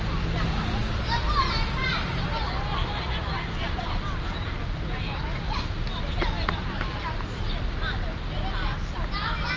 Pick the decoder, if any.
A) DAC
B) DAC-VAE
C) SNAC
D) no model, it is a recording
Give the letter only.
D